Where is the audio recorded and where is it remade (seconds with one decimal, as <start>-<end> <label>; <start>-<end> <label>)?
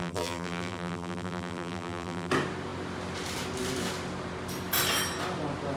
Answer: 0.0-2.3 remade; 2.3-5.8 recorded